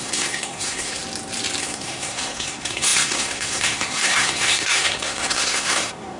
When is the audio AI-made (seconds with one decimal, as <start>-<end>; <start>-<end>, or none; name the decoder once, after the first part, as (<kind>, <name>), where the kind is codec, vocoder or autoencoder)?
0.0-1.0 (codec, SNAC); 1.6-6.2